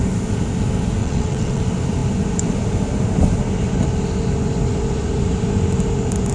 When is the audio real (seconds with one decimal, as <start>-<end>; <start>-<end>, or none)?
0.0-1.0; 1.6-6.3